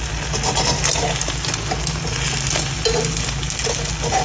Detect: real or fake real